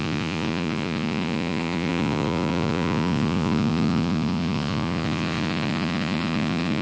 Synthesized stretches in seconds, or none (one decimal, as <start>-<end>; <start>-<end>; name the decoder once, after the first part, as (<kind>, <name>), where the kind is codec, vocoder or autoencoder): 0.0-6.8 (vocoder, Vocos)